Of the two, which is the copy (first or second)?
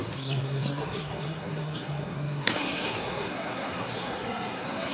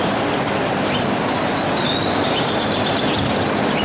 first